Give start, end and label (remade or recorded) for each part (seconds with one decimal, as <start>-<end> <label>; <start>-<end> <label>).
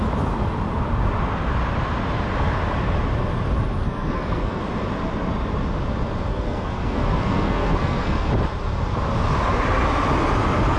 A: 0.0-3.8 recorded; 3.8-4.6 remade; 4.6-6.3 recorded; 6.3-8.3 remade; 8.3-10.8 recorded